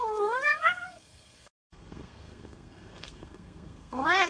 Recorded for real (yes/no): no